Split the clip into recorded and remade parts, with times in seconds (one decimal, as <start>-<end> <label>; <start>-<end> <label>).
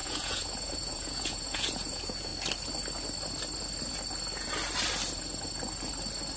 0.0-2.3 remade; 2.3-6.4 recorded